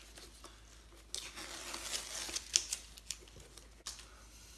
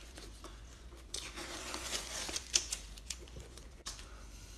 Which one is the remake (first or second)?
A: second